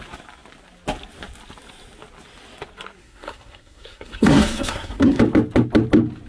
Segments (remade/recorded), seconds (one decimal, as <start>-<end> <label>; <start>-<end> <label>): 0.0-3.0 recorded; 3.0-5.2 remade; 5.2-6.3 recorded